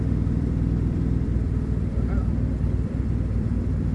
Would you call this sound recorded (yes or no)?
no